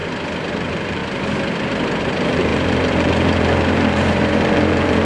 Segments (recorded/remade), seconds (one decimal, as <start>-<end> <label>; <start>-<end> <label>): 0.0-0.5 recorded; 0.5-1.0 remade; 1.0-2.0 recorded; 2.0-5.0 remade